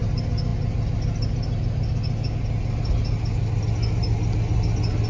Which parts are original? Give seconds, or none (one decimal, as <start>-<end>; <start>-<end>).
0.0-5.1